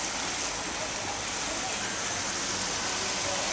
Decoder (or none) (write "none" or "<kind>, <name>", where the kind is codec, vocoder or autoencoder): none